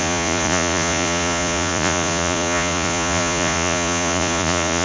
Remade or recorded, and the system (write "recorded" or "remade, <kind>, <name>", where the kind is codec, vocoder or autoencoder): remade, vocoder, Vocos